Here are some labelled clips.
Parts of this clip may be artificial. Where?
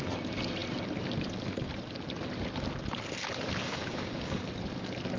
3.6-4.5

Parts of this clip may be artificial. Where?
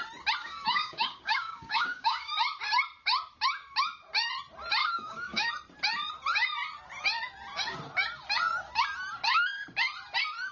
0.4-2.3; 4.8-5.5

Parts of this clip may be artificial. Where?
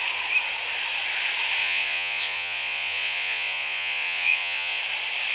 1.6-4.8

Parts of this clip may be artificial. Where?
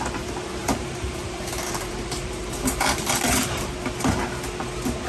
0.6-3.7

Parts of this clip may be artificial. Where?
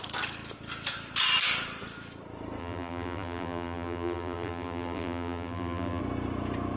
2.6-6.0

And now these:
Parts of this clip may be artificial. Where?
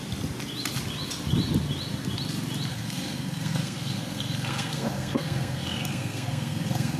2.7-7.0